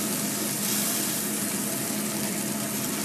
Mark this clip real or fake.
real